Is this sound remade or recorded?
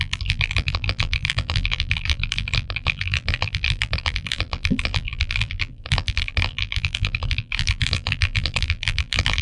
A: remade